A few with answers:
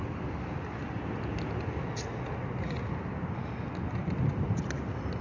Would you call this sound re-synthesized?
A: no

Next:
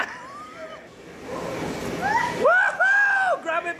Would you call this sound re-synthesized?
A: no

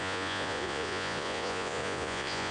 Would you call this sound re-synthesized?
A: yes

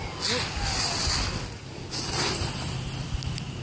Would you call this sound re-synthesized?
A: no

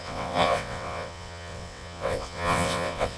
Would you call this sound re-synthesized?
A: yes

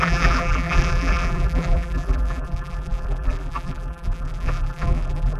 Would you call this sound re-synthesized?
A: yes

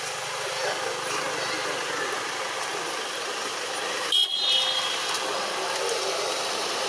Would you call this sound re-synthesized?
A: no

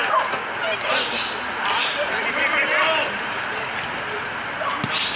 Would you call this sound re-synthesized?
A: no